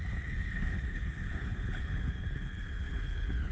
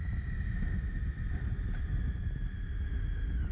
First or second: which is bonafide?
second